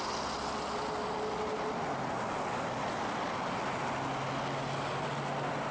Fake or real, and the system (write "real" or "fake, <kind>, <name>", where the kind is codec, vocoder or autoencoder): real